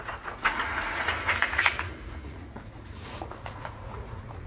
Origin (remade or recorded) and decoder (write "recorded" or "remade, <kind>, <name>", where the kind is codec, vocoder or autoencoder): remade, vocoder, Vocos